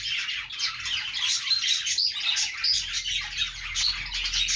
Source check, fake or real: real